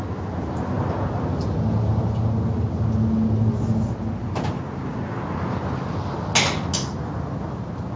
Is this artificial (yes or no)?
no